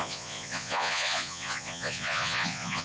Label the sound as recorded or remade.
remade